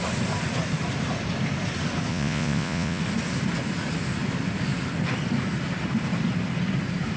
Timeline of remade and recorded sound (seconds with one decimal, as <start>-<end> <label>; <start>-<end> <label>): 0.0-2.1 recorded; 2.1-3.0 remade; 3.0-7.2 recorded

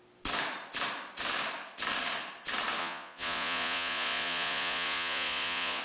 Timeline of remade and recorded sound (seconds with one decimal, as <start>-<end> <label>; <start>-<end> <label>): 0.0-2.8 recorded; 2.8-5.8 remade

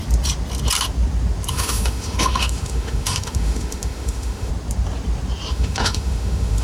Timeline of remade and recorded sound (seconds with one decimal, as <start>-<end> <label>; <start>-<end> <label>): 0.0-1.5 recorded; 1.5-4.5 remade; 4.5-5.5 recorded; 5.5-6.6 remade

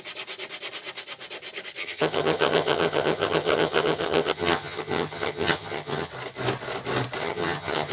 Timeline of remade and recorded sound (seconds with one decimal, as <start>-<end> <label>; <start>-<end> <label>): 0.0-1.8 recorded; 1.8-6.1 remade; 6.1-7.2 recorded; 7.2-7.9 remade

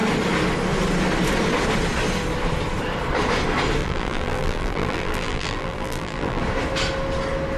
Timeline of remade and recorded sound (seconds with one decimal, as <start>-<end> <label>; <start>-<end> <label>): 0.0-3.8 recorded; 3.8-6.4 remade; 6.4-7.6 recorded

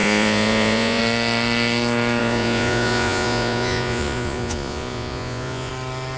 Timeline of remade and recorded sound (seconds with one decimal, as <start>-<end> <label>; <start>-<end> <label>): 0.0-1.0 remade; 1.0-2.2 recorded; 2.2-5.7 remade; 5.7-6.2 recorded